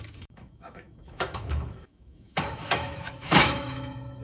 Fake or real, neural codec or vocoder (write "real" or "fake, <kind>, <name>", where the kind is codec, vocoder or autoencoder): fake, autoencoder, DAC-VAE